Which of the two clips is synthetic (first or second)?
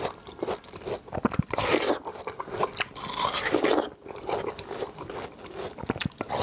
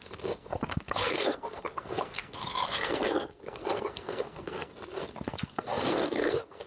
second